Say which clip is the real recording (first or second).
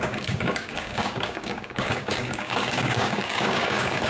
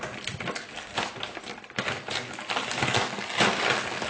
second